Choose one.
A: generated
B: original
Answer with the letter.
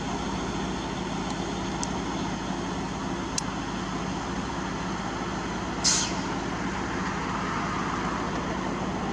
B